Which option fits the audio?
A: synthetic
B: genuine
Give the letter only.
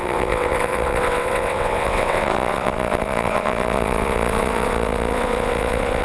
A